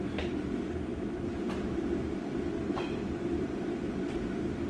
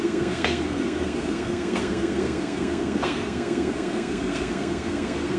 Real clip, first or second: first